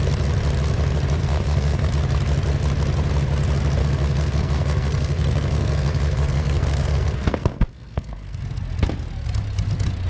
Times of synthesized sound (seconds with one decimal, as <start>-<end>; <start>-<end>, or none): 1.2-1.9; 3.8-8.4